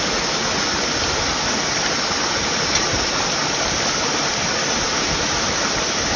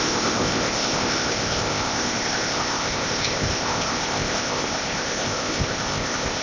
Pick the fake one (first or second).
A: second